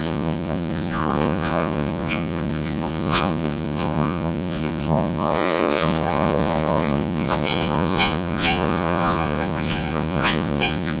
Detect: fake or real fake